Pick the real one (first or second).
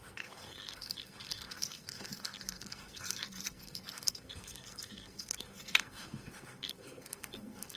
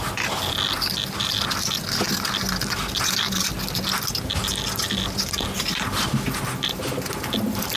second